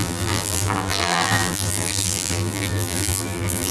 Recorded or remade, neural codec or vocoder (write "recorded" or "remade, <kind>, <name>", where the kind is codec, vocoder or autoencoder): remade, vocoder, BigVGAN v2